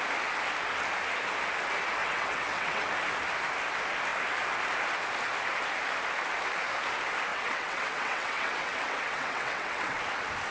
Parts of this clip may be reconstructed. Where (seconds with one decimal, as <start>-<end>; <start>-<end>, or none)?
2.0-2.9; 7.3-10.0